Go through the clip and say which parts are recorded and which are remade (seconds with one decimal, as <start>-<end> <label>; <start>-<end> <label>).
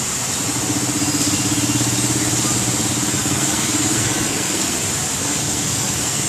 0.0-3.2 recorded; 3.2-4.8 remade; 4.8-5.2 recorded; 5.2-6.3 remade